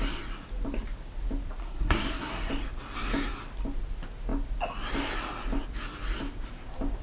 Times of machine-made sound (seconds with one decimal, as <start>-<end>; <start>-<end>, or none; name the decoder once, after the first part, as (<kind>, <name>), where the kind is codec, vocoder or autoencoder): 1.6-2.5 (codec, SNAC)